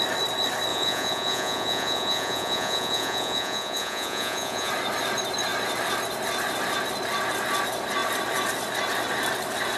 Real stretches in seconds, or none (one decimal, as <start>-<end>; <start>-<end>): 0.0-0.7; 4.7-9.8